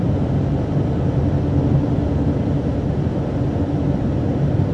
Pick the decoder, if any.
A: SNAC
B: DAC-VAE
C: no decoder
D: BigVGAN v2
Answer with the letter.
C